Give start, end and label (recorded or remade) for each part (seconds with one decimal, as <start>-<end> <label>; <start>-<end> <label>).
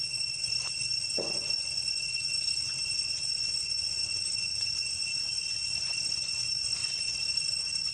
0.0-7.9 remade